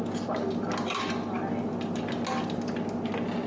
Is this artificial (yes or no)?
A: no